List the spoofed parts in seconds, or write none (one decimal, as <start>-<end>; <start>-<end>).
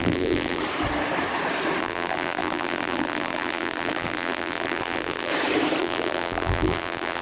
0.0-0.6; 1.8-5.3; 5.8-7.2